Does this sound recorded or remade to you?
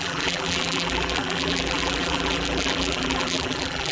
remade